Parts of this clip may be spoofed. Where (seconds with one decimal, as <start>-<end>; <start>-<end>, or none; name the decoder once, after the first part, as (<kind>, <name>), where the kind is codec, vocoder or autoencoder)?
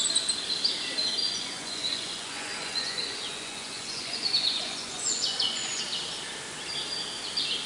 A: 1.2-5.8 (vocoder, Vocos)